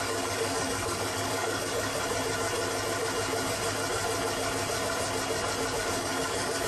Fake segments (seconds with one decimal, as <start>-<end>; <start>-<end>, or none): 0.0-1.9; 5.8-6.7